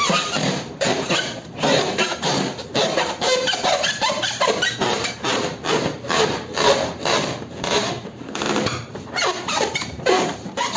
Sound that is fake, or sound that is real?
fake